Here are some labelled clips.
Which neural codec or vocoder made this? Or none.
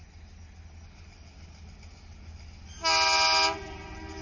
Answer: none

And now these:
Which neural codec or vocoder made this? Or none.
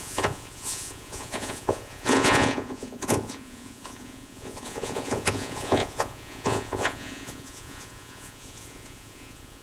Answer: vocoder, Vocos